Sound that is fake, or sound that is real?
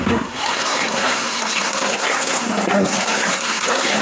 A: fake